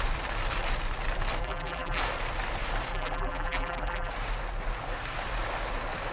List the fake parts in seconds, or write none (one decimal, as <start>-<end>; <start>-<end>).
1.4-2.0; 2.9-4.1